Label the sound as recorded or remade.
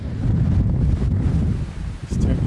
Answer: recorded